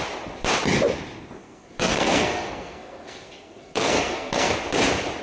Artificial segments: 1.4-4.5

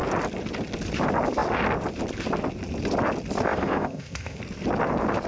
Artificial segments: 3.4-4.4

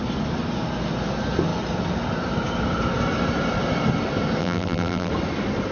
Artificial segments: 4.4-5.1

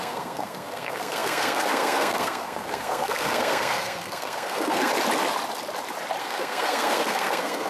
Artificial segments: 0.0-4.9; 6.2-7.7

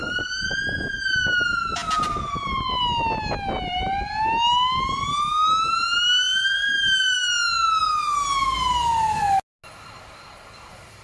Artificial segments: none

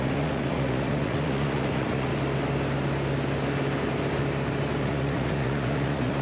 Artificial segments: 0.0-2.1; 4.8-6.2

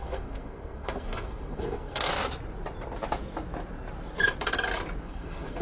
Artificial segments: 0.0-2.1; 5.0-5.6